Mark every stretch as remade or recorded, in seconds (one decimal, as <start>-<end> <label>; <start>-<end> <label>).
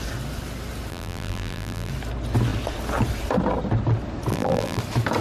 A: 0.0-0.9 recorded; 0.9-1.9 remade; 1.9-4.3 recorded; 4.3-4.8 remade; 4.8-5.2 recorded